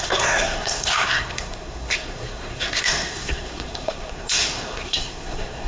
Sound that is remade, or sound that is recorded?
remade